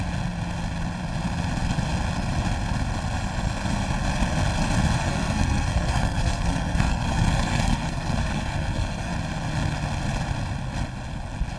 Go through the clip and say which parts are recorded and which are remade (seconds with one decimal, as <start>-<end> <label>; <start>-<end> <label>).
0.0-5.0 recorded; 5.0-9.1 remade; 9.1-11.6 recorded